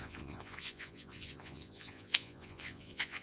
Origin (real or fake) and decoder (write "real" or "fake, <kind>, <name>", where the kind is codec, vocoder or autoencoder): fake, vocoder, Vocos